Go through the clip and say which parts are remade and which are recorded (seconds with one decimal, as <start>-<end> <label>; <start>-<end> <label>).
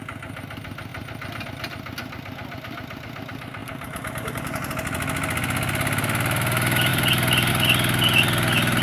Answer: 0.0-3.6 recorded; 3.6-4.7 remade; 4.7-6.9 recorded; 6.9-7.5 remade; 7.5-8.8 recorded